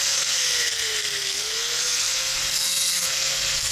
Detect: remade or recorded remade